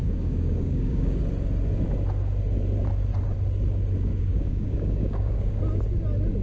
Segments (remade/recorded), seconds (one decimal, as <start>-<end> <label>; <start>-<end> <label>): 0.0-1.2 remade; 1.2-4.1 recorded; 4.1-5.6 remade; 5.6-6.4 recorded